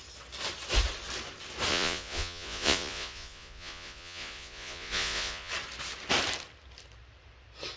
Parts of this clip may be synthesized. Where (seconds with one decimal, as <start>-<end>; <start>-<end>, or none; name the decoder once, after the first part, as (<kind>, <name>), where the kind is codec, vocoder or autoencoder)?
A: 1.7-5.5 (vocoder, Vocos)